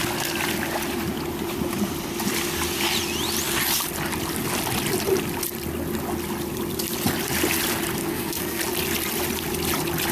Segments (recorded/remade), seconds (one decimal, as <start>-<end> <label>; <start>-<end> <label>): 0.0-8.0 recorded; 8.0-8.6 remade; 8.6-10.1 recorded